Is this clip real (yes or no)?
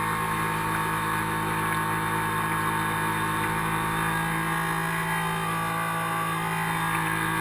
yes